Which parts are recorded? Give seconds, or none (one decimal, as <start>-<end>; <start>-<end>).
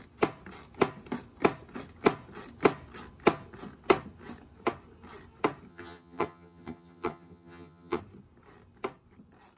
0.0-5.7; 8.0-9.6